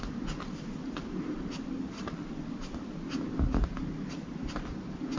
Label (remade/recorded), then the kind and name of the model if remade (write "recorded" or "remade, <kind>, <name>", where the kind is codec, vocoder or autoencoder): recorded